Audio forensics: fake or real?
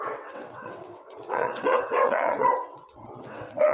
fake